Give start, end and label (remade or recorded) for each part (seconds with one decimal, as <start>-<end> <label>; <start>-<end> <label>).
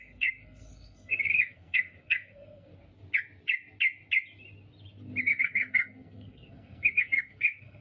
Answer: 0.0-2.7 remade; 2.7-5.2 recorded; 5.2-7.8 remade